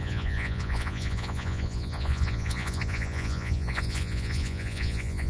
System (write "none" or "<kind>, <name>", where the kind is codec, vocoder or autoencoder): vocoder, Vocos